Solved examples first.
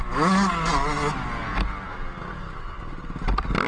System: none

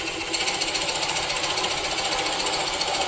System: none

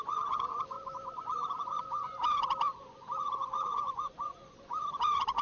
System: vocoder, Vocos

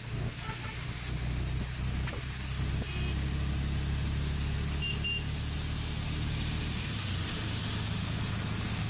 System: none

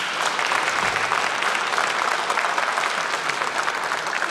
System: none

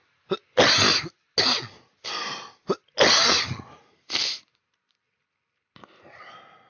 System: none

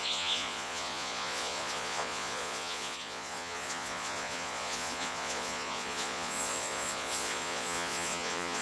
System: vocoder, Vocos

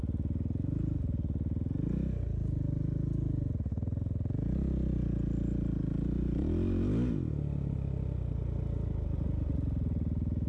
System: none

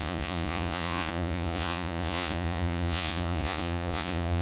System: vocoder, Vocos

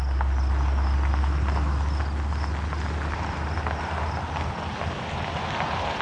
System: none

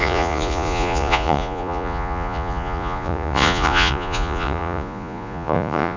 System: vocoder, Vocos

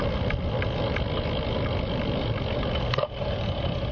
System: none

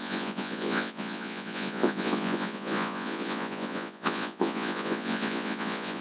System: vocoder, Vocos